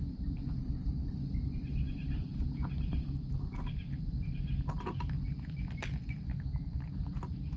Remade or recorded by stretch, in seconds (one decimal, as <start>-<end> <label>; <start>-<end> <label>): 0.0-0.6 recorded; 0.6-1.1 remade; 1.1-7.6 recorded